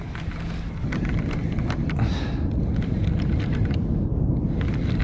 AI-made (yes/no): no